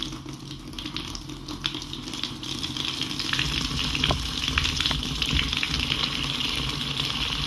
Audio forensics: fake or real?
real